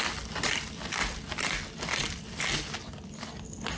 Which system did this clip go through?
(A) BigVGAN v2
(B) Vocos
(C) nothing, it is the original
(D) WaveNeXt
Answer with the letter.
C